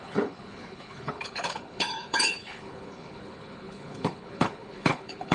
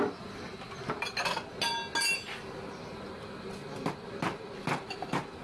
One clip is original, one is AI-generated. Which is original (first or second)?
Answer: second